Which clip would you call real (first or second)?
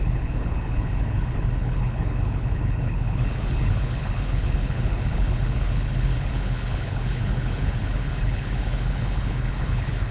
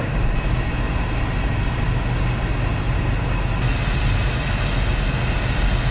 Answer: second